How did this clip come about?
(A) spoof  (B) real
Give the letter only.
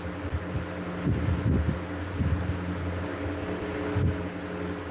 B